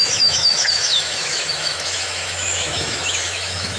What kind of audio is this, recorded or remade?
remade